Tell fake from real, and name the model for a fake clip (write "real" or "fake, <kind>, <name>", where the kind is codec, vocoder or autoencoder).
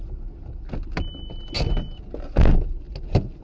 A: real